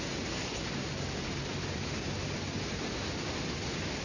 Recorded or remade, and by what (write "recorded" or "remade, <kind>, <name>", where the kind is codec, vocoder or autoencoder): recorded